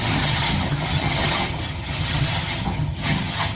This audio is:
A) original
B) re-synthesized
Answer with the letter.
B